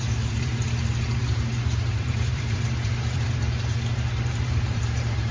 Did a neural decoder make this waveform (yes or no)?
yes